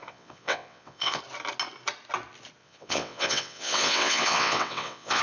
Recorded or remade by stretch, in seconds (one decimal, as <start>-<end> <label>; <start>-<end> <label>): 0.0-1.2 remade; 1.2-2.6 recorded; 2.6-5.2 remade